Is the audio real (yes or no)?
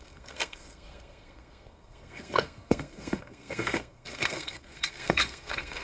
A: no